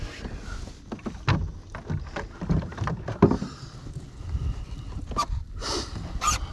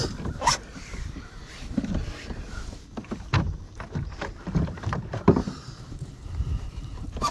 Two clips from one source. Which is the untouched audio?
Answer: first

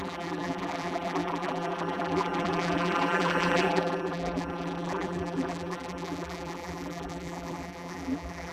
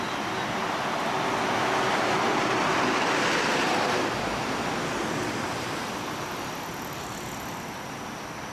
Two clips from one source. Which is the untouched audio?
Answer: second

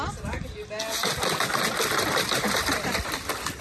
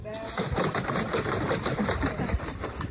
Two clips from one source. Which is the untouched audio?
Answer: first